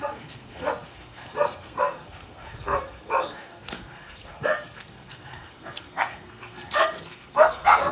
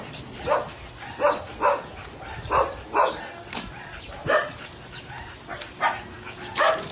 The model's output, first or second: first